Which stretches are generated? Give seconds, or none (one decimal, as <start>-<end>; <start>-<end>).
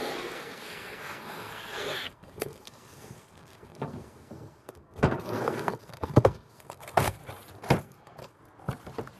0.0-7.2; 7.8-8.4